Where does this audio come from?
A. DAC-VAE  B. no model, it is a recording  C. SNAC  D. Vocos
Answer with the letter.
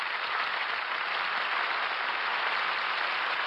B